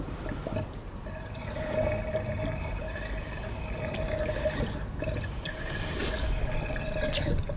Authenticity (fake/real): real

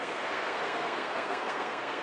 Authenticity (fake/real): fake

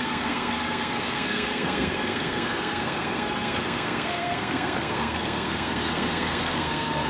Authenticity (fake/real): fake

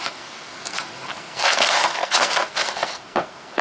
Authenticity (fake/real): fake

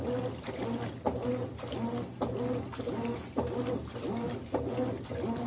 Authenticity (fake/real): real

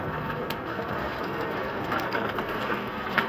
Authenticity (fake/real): fake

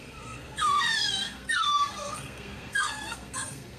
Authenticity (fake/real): fake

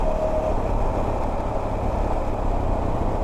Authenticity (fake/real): real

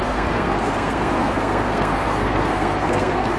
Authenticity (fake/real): fake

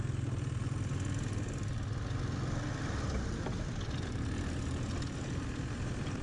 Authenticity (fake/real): real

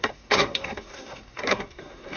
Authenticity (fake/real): fake